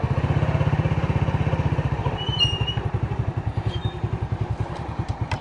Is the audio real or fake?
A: fake